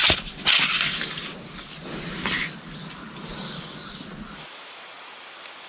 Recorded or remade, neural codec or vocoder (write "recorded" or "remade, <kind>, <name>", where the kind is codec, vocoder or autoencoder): recorded